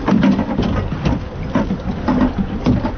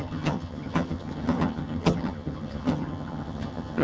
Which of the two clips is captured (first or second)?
first